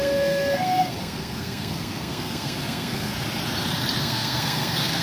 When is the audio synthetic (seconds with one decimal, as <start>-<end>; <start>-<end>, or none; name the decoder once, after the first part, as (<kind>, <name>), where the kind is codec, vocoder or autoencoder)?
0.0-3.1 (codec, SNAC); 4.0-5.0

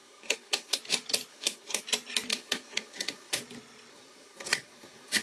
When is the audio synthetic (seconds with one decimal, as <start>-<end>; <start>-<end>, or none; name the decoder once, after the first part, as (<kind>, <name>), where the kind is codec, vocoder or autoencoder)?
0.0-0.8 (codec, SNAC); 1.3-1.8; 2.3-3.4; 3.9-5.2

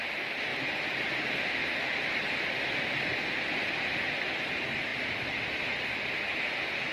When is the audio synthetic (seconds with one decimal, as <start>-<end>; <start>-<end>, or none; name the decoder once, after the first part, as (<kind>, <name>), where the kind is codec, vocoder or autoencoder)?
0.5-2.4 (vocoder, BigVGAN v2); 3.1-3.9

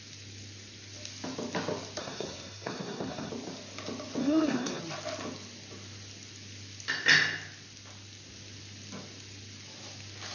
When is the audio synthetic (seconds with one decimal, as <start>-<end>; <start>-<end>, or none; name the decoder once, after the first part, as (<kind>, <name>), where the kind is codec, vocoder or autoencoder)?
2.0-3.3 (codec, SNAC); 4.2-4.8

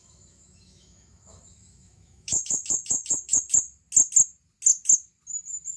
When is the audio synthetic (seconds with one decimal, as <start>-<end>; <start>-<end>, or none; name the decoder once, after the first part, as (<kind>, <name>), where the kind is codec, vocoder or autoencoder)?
0.0-3.5 (autoencoder, DAC-VAE)

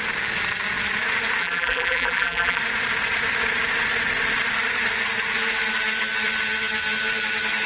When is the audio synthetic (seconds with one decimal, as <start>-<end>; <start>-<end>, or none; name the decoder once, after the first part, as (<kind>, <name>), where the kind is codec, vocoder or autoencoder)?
1.4-2.6 (vocoder, BigVGAN v2)

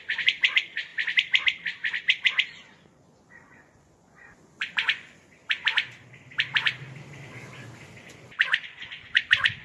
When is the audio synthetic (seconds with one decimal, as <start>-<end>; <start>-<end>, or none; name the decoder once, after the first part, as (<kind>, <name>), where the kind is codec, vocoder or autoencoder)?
0.0-0.9 (vocoder, Vocos); 2.0-5.4; 7.9-9.6